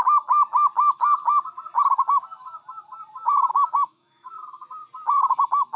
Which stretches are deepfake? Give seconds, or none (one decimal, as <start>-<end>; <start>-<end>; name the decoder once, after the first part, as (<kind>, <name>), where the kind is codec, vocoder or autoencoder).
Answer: 3.5-4.8 (autoencoder, DAC-VAE)